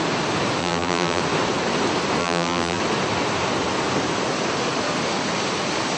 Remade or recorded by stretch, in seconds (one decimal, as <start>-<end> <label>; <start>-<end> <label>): 0.0-0.6 recorded; 0.6-1.2 remade; 1.2-2.2 recorded; 2.2-2.8 remade; 2.8-6.0 recorded